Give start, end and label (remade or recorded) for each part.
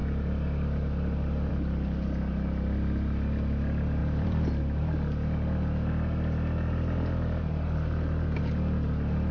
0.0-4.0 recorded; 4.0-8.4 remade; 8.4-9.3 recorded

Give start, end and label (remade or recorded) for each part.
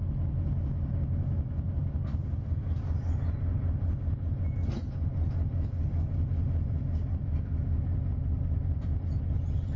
0.0-0.9 recorded; 0.9-1.8 remade; 1.8-5.1 recorded; 5.1-9.8 remade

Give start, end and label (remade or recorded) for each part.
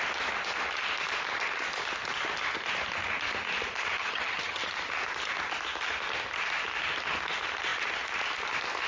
0.0-4.0 recorded; 4.0-4.6 remade; 4.6-8.9 recorded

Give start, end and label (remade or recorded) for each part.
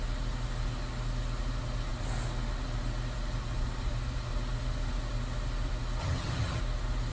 0.0-6.0 recorded; 6.0-6.6 remade; 6.6-7.1 recorded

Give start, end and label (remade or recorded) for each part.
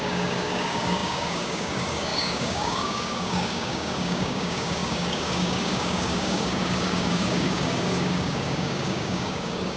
0.0-9.8 remade